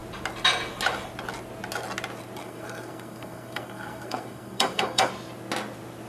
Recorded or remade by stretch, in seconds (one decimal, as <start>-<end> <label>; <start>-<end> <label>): 0.0-2.4 recorded; 2.4-5.1 remade; 5.1-6.1 recorded